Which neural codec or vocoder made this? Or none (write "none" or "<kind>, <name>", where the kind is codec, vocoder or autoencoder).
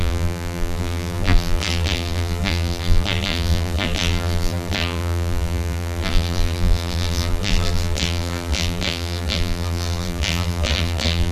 vocoder, BigVGAN v2